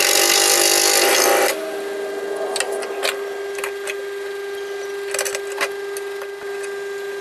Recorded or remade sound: recorded